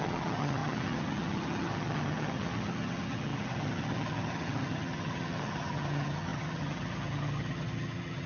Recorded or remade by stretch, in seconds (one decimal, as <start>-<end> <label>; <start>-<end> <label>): 0.0-8.3 remade